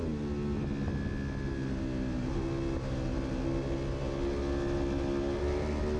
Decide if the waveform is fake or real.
real